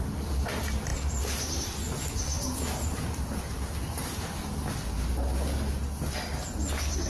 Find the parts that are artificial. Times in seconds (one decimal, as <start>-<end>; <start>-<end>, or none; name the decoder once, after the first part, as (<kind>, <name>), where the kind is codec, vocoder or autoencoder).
none